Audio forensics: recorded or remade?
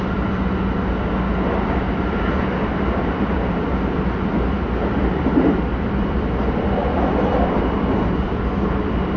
recorded